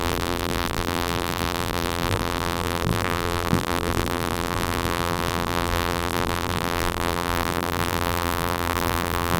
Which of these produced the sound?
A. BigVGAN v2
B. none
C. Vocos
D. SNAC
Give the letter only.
A